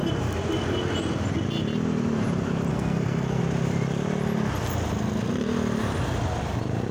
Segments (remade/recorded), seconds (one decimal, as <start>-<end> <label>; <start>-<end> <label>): 0.0-2.7 recorded; 2.7-3.4 remade; 3.4-6.9 recorded